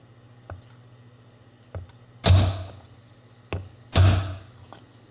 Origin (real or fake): real